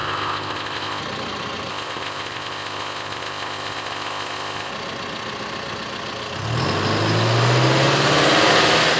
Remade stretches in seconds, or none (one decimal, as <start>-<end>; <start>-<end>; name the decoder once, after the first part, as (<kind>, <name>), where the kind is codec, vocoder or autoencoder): 0.0-1.0 (codec, ZipCodec); 1.7-4.7